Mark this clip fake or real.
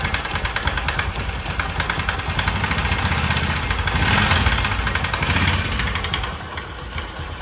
real